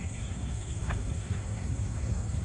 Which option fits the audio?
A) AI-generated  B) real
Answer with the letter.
A